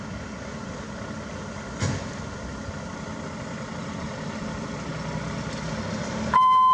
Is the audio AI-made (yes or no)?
no